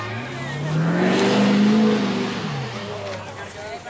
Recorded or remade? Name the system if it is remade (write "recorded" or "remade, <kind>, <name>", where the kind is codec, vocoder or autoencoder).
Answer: recorded